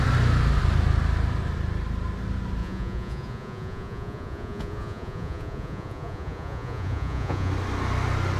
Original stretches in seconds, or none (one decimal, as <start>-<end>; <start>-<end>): 0.0-2.6; 7.5-8.4